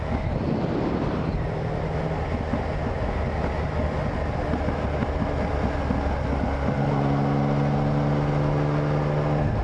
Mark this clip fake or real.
real